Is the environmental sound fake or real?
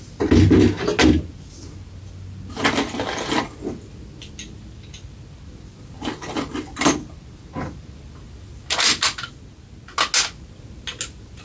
real